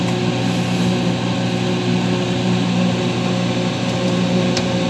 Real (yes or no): yes